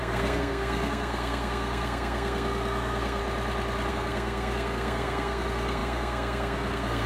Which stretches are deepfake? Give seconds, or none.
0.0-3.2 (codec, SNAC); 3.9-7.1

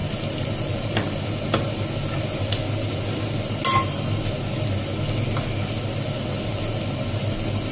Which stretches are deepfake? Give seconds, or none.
none

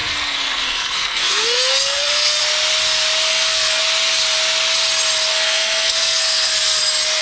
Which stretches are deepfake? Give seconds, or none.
0.0-2.4 (codec, SNAC); 3.3-3.8; 5.3-6.8